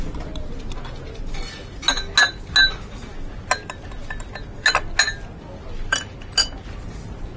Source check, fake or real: real